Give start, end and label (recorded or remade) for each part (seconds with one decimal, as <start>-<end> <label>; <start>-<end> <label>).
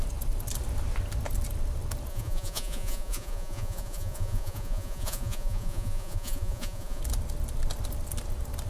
0.0-2.1 recorded; 2.1-7.0 remade; 7.0-8.7 recorded